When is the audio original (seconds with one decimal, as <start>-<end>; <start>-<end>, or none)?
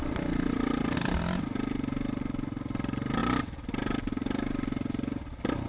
0.0-5.7